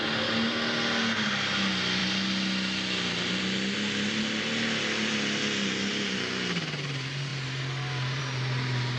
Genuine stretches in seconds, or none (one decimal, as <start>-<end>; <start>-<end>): 0.0-9.0